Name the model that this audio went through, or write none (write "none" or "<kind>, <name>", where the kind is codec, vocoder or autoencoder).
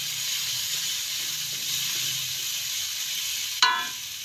none